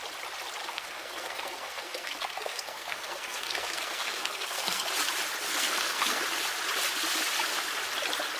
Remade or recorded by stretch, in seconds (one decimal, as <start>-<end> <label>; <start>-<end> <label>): 0.0-0.6 recorded; 0.6-4.9 remade; 4.9-5.5 recorded; 5.5-6.2 remade; 6.2-8.4 recorded